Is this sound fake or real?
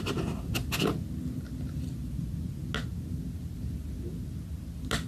real